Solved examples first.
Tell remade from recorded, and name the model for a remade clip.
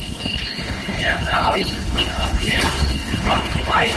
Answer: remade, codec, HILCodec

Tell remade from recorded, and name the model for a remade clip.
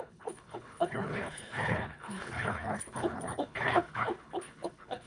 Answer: remade, codec, HILCodec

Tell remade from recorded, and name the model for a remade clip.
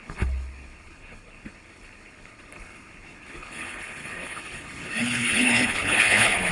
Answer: remade, codec, HILCodec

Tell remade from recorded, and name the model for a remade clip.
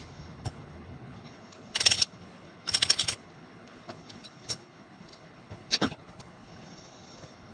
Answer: remade, codec, HILCodec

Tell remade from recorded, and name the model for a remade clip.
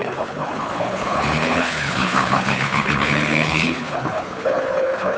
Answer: remade, codec, HILCodec